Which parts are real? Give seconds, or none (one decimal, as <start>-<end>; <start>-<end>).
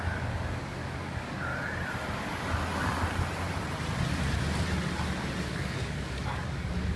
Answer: 1.5-5.4